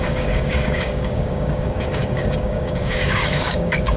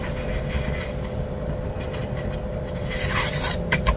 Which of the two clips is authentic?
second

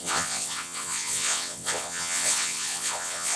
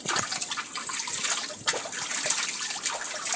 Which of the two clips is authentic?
second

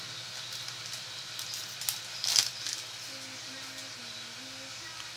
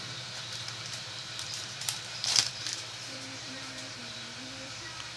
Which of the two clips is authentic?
first